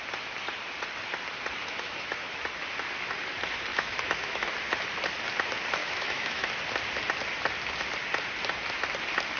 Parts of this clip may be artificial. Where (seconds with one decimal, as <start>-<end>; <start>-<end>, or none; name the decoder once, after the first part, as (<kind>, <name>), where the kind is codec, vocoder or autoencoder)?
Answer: 1.6-2.4 (autoencoder, DAC-VAE); 3.7-4.5; 5.8-6.5